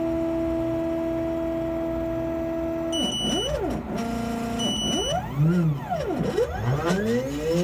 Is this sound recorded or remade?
recorded